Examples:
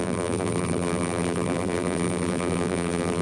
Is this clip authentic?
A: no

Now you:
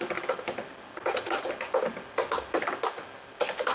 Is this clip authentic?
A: yes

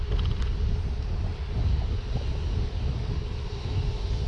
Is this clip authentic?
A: yes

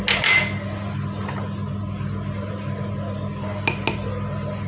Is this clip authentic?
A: yes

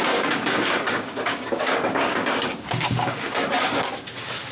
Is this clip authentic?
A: no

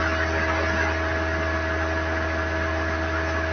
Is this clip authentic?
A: yes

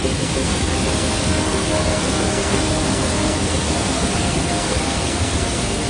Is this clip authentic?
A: no